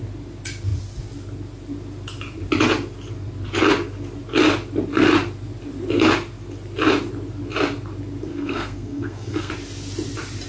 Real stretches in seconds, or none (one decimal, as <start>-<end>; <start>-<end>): 0.0-8.3; 9.5-10.5

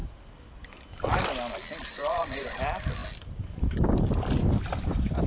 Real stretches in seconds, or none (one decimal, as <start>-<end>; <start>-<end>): 0.0-1.9; 2.6-5.3

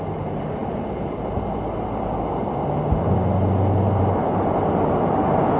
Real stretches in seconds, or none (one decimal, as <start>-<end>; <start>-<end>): 0.0-5.6